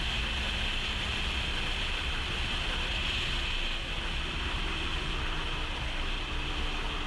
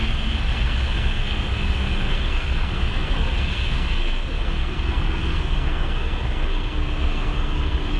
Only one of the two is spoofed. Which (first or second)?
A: second